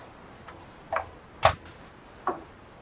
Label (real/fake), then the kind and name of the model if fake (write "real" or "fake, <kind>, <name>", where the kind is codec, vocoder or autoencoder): real